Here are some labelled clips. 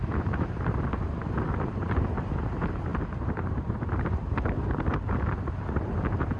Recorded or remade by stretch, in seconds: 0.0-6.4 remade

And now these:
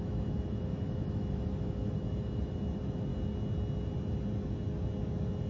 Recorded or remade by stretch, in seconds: 0.0-3.1 remade; 3.1-5.5 recorded

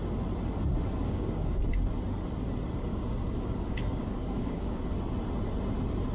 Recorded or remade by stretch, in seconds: 0.0-1.0 recorded; 1.0-1.6 remade; 1.6-2.9 recorded; 2.9-4.9 remade; 4.9-6.1 recorded